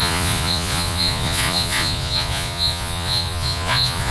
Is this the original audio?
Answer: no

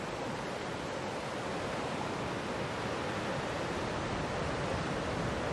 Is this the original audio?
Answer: yes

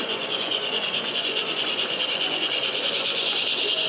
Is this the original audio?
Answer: no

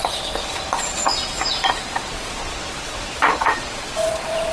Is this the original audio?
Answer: no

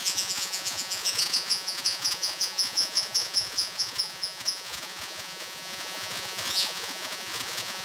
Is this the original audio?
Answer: no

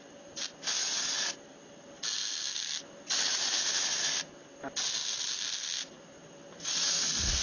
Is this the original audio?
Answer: yes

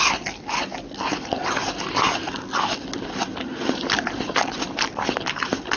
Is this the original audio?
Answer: yes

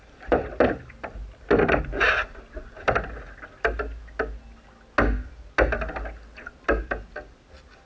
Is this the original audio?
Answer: yes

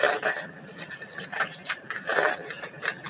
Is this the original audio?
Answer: yes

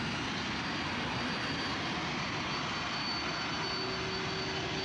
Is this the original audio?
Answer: yes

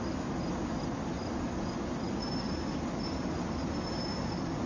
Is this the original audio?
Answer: yes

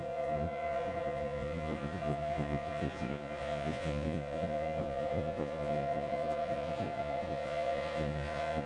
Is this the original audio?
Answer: no